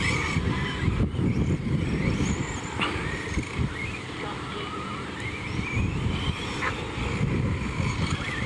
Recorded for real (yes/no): yes